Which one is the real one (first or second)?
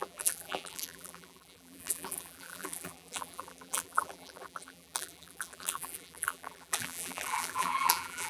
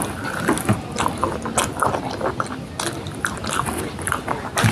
second